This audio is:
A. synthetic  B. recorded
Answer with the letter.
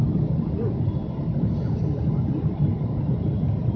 B